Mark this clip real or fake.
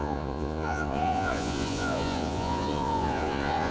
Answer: fake